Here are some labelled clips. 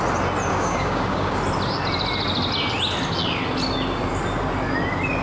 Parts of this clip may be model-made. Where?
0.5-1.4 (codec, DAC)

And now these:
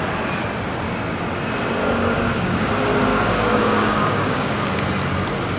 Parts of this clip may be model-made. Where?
1.8-2.7 (codec, DAC); 3.1-4.8

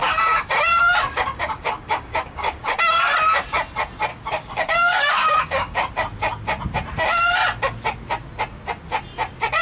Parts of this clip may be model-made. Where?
0.0-2.8 (codec, DAC); 4.1-5.9

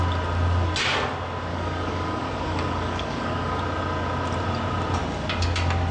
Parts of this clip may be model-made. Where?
1.5-3.6 (codec, DAC)

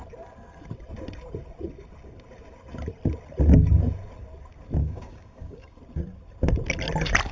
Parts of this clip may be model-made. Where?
4.8-5.8 (codec, DAC)